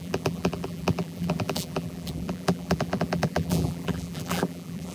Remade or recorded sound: remade